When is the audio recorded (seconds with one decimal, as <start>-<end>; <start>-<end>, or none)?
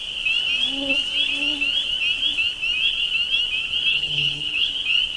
0.0-3.9; 4.7-5.2